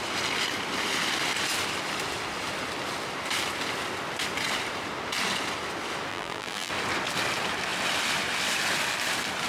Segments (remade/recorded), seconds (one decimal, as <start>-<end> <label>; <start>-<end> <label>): 0.0-6.1 recorded; 6.1-6.7 remade; 6.7-9.5 recorded